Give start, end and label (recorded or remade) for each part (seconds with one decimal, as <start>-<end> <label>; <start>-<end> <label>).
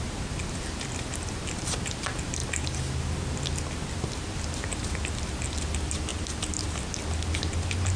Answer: 0.0-8.0 recorded